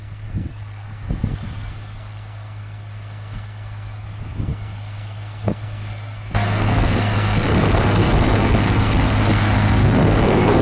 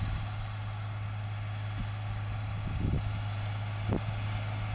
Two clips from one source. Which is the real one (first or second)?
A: second